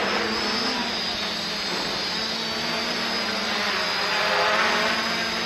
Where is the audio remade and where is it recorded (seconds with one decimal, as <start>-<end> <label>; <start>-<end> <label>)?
0.0-5.5 recorded